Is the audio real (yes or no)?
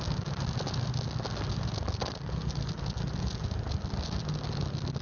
yes